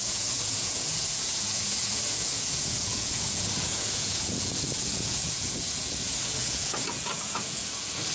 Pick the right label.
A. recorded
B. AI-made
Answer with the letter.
B